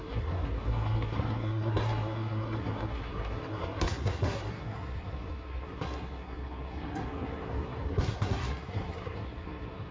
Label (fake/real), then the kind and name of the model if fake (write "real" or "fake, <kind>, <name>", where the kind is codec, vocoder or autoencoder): fake, codec, SNAC